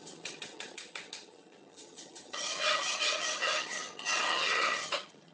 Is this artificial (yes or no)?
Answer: yes